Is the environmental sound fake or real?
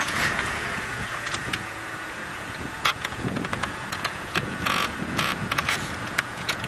fake